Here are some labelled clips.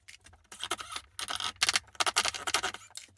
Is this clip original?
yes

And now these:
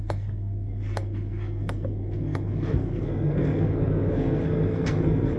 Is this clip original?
no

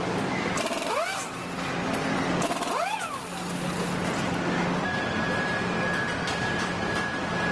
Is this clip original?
yes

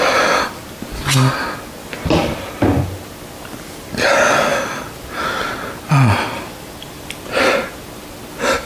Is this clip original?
yes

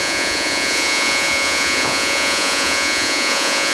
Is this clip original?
no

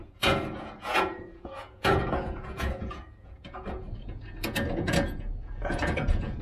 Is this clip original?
no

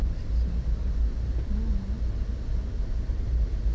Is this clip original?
yes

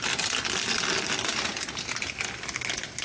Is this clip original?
yes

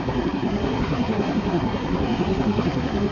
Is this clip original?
no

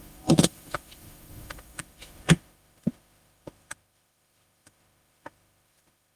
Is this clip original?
no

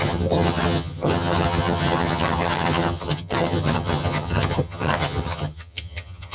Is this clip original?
no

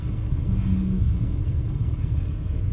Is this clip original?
no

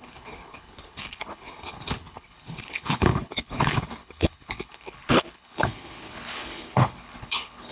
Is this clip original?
no